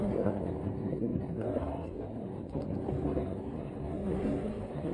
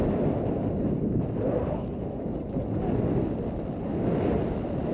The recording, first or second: second